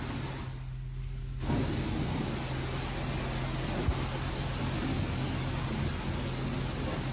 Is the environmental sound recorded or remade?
recorded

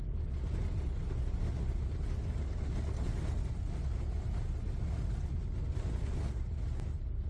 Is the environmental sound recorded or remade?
recorded